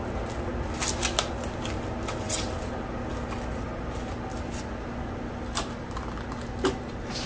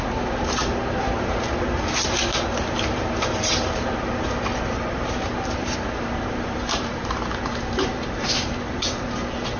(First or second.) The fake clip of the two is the second